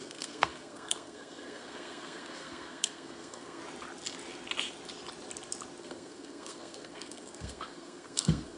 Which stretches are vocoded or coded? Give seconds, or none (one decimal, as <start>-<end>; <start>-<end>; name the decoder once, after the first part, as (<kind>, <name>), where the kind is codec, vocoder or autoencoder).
0.0-3.6 (codec, SNAC); 5.8-8.6